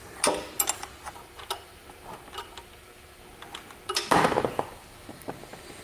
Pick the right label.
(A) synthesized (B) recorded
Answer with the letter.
B